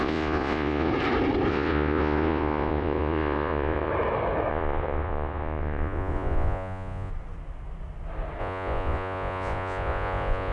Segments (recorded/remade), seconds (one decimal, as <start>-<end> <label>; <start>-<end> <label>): 0.0-0.9 remade; 0.9-1.5 recorded; 1.5-3.9 remade; 3.9-4.5 recorded; 4.5-7.1 remade; 7.1-8.4 recorded; 8.4-10.5 remade